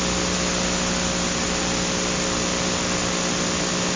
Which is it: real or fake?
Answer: real